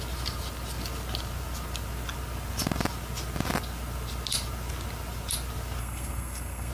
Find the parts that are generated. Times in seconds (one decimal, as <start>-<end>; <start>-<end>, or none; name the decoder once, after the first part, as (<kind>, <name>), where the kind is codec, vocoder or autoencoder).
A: 5.8-6.7 (codec, SNAC)

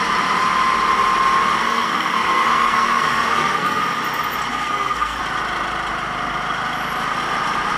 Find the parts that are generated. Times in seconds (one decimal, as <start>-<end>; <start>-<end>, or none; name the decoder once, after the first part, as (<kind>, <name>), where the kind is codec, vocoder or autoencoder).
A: 1.6-3.8 (codec, SNAC); 4.5-5.2

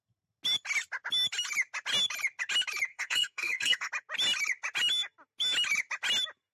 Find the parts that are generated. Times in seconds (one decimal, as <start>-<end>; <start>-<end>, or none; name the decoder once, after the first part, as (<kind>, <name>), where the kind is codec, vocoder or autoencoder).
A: 2.9-3.9 (codec, SNAC)

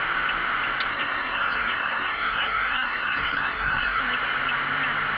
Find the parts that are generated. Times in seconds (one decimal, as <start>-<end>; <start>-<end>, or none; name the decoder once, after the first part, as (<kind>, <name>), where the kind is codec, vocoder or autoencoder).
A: 0.9-4.0 (codec, SNAC)

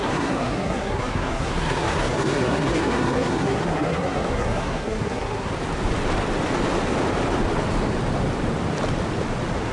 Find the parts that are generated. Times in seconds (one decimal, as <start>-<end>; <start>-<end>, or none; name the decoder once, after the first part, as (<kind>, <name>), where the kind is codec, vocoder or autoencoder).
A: 0.0-5.5 (codec, SNAC)

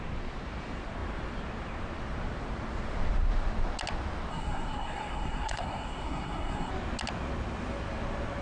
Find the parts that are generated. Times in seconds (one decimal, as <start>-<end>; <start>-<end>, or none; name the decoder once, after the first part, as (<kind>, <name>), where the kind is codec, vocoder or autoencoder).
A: 4.3-6.7 (codec, SNAC)